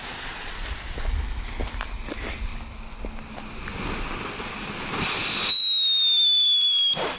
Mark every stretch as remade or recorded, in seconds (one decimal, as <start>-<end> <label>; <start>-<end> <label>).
0.0-7.2 recorded